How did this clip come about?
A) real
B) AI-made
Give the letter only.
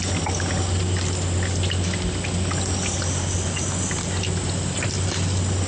A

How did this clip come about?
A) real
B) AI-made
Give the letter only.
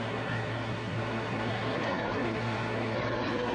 B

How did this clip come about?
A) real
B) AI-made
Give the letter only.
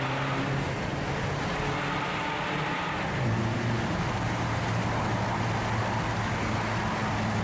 A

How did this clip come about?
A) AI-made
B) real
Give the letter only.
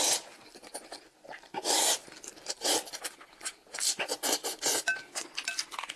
B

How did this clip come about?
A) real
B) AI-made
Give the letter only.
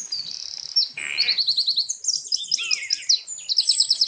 A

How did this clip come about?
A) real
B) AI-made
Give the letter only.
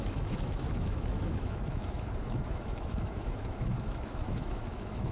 B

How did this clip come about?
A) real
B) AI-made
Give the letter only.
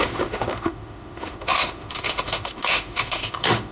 B